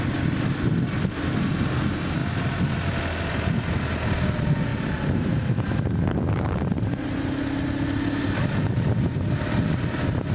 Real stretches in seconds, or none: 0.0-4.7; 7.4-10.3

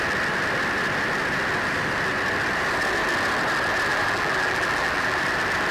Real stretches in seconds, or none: 0.0-3.9; 5.2-5.7

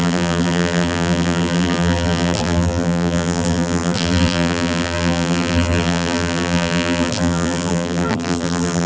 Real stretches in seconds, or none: none